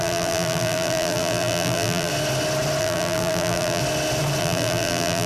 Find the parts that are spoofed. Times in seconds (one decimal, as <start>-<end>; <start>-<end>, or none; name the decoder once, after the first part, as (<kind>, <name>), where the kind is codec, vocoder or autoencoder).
0.0-2.1 (vocoder, BigVGAN v2); 2.8-3.8; 4.4-5.3